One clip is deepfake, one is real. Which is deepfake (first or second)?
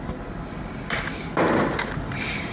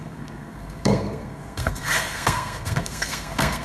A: second